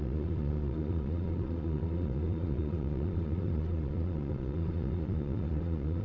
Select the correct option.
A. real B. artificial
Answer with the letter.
B